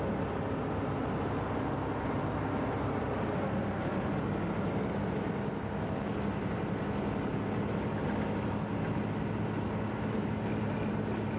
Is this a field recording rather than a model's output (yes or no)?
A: yes